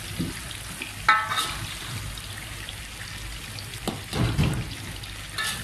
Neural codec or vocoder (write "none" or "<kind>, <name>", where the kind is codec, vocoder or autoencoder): none